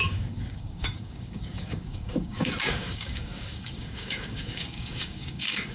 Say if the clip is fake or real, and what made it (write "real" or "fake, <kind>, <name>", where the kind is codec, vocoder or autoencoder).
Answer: fake, codec, DAC